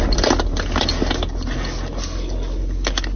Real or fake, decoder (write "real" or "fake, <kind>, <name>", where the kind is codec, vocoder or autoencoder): real